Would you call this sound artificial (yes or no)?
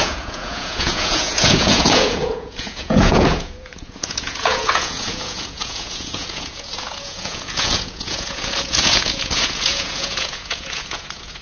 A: yes